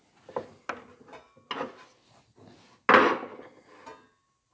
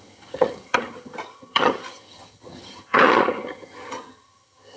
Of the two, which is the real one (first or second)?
first